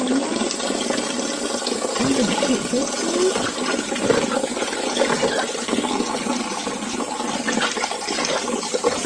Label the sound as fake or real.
real